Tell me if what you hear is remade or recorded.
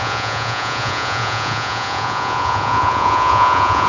remade